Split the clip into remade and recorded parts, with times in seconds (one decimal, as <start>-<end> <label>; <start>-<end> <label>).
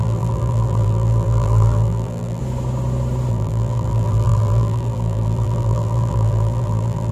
0.0-2.4 remade; 2.4-3.3 recorded; 3.3-7.1 remade